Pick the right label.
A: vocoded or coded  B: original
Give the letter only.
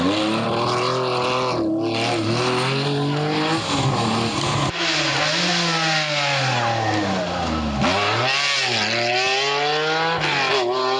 B